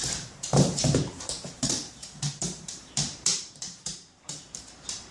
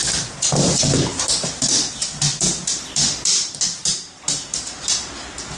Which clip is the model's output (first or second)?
first